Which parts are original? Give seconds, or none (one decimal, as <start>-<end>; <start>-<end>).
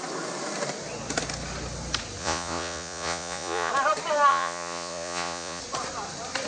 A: 0.0-2.2; 3.7-4.3; 5.6-6.5